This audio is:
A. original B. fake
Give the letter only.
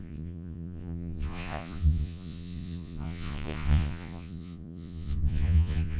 B